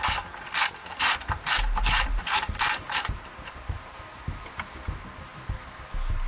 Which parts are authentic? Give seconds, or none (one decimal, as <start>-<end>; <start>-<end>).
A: 0.0-0.9; 4.0-6.3